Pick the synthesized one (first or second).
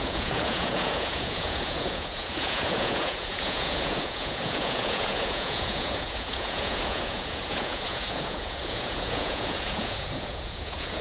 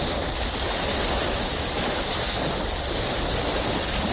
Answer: first